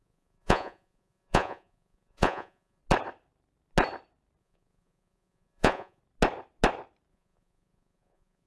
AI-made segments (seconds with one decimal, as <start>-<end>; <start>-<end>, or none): 0.0-2.8; 4.4-6.0; 7.1-8.5